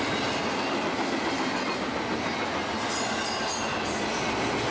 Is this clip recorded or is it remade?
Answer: recorded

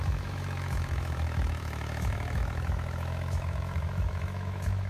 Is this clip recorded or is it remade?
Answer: remade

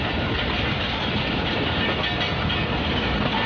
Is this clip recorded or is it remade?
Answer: recorded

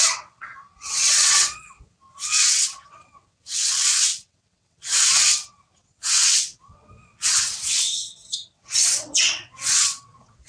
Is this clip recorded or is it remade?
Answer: remade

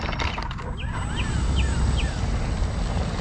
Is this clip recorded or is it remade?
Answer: recorded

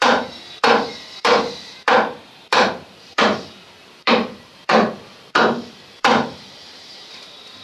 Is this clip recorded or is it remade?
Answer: remade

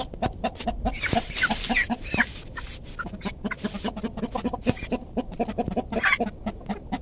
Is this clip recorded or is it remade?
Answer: recorded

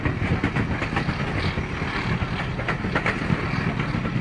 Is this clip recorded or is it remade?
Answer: recorded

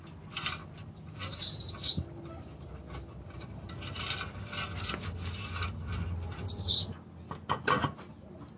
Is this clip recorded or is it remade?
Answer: recorded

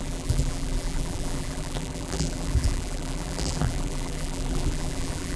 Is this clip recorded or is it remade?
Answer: remade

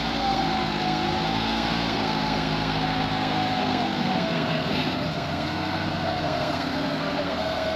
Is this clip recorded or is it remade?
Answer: remade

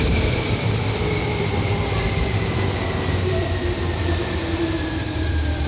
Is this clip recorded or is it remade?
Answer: remade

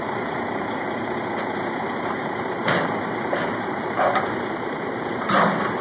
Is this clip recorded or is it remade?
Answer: remade